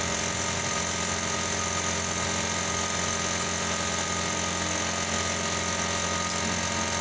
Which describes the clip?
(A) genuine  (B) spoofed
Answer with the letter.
A